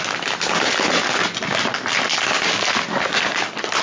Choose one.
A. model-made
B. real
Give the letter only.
B